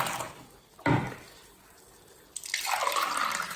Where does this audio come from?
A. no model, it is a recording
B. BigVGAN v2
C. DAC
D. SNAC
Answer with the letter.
A